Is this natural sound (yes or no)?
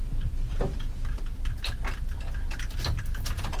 yes